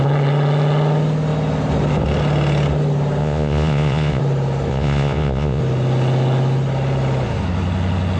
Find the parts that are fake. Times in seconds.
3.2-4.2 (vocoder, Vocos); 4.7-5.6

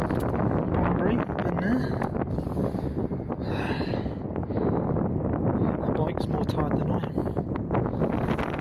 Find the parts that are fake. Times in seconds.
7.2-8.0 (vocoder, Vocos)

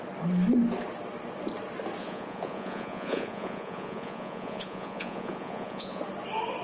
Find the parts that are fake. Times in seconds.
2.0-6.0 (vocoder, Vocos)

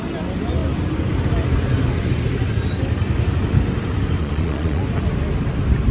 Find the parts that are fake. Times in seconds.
4.2-4.8 (vocoder, Vocos)

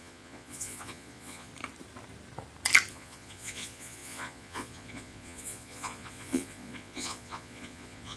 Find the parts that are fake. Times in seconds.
0.0-1.5 (vocoder, Vocos); 2.9-8.2

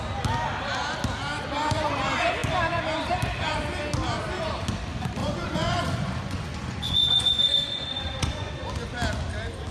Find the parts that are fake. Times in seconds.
5.2-8.5 (vocoder, Vocos)